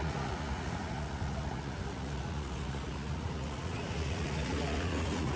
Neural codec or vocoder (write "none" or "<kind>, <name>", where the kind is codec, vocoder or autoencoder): vocoder, Vocos